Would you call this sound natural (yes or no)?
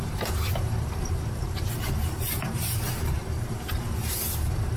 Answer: no